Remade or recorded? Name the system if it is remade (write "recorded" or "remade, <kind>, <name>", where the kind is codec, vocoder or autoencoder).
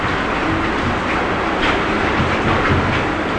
recorded